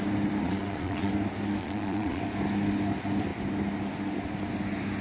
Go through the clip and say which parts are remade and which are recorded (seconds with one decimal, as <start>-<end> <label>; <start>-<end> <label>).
0.0-0.4 recorded; 0.4-1.1 remade; 1.1-1.6 recorded; 1.6-2.2 remade; 2.2-5.0 recorded